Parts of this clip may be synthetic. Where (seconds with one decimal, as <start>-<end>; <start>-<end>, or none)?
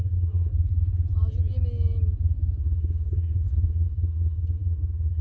0.0-0.5; 2.6-5.2